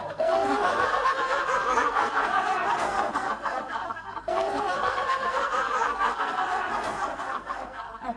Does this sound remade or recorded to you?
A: remade